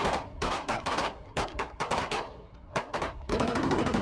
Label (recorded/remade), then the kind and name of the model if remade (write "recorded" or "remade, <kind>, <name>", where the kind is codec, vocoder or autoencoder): remade, codec, SNAC